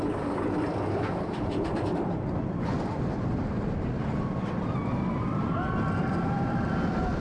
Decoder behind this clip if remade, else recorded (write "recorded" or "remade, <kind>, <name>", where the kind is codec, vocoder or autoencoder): remade, vocoder, BigVGAN v2